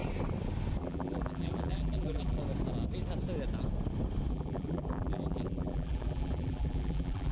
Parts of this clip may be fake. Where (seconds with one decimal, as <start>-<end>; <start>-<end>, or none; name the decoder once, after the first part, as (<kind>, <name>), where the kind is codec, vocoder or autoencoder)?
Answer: 0.8-2.4 (vocoder, BigVGAN v2); 4.3-7.3